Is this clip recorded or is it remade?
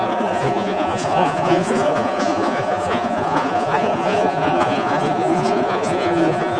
remade